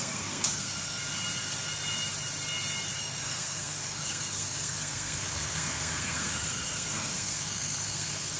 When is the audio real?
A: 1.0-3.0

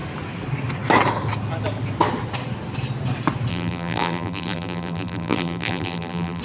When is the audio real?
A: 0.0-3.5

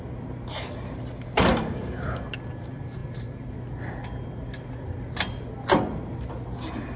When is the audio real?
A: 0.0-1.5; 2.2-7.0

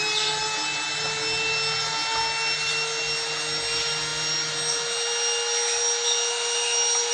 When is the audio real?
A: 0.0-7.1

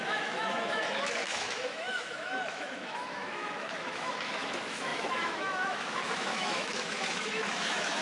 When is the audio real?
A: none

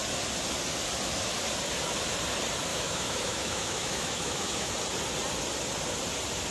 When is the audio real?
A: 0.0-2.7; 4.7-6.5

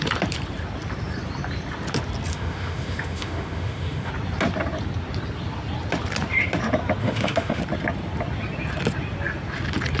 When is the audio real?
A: 0.0-2.3; 4.1-7.0; 7.6-10.0

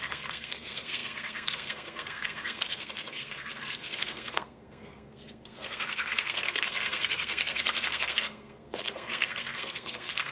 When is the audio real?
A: none